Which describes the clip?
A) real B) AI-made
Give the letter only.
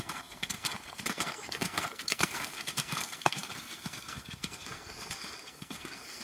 B